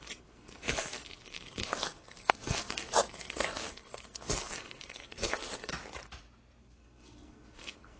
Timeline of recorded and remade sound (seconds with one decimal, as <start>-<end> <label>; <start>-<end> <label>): 0.0-5.7 remade; 5.7-6.6 recorded; 6.6-8.0 remade